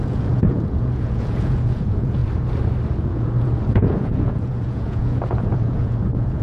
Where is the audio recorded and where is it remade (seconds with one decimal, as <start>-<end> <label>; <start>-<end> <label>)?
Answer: 0.0-2.2 remade; 2.2-3.0 recorded; 3.0-6.4 remade